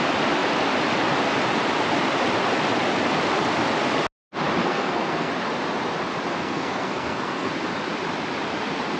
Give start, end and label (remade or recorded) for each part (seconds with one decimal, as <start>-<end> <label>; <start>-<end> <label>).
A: 0.0-4.6 recorded; 4.6-5.3 remade; 5.3-6.4 recorded; 6.4-7.5 remade; 7.5-9.0 recorded